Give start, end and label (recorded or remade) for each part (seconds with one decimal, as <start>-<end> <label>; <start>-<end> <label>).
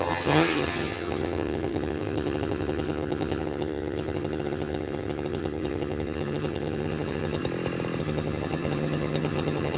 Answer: 0.0-7.4 remade; 7.4-8.0 recorded; 8.0-9.8 remade